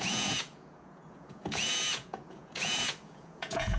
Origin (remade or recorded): remade